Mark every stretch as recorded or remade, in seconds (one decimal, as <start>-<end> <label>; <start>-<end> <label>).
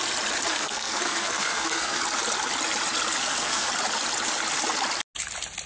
0.0-0.5 recorded; 0.5-2.0 remade; 2.0-3.2 recorded; 3.2-3.7 remade; 3.7-5.7 recorded